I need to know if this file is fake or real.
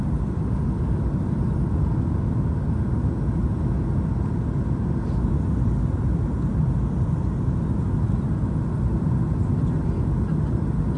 real